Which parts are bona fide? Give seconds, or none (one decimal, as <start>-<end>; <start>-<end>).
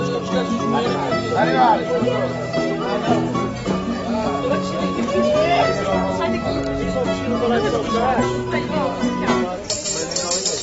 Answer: 0.0-3.6; 5.1-10.6